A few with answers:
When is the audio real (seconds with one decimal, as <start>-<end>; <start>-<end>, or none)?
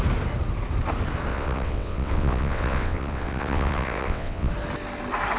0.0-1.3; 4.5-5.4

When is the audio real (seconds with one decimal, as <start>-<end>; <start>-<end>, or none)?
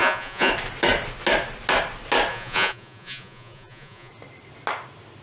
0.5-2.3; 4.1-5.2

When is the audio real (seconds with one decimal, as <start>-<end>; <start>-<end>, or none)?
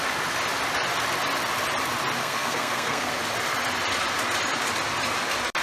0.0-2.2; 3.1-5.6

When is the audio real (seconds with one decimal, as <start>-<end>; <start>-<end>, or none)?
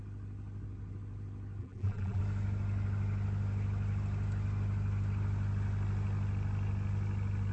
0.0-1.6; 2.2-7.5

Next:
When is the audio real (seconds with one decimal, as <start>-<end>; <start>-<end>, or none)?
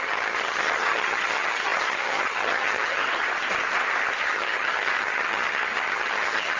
3.0-4.2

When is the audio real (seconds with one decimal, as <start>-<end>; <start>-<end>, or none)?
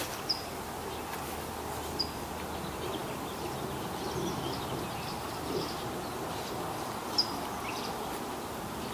0.0-8.9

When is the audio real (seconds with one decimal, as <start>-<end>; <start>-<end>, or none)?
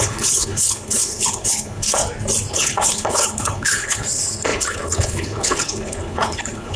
2.0-2.5